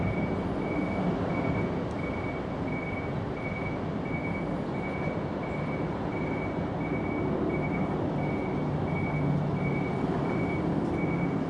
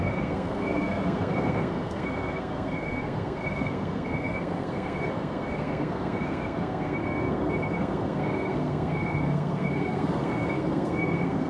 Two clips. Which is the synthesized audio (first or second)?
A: second